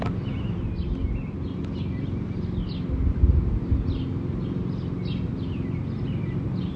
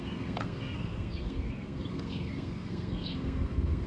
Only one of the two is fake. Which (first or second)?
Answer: second